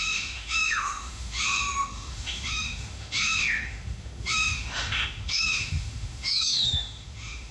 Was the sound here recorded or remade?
remade